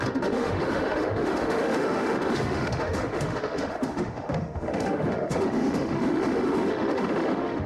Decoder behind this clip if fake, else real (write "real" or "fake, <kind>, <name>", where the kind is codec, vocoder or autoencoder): fake, autoencoder, DAC-VAE